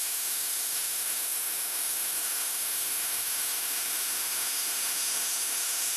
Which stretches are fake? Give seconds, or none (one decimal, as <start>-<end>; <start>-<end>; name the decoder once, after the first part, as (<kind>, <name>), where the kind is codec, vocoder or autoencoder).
0.0-6.0 (autoencoder, DAC-VAE)